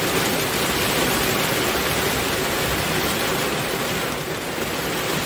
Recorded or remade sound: recorded